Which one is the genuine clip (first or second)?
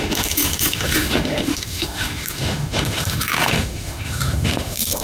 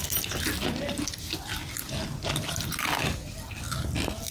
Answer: second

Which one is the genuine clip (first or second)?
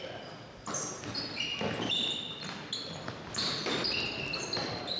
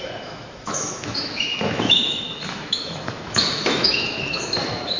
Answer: first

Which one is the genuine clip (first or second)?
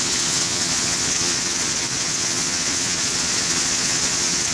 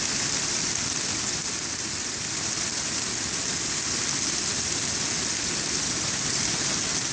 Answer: second